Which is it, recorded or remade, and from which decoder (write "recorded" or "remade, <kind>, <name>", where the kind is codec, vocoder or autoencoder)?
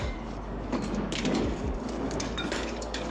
remade, codec, DAC